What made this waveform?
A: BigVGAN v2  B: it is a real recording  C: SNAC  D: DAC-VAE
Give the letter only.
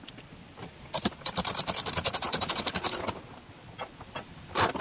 A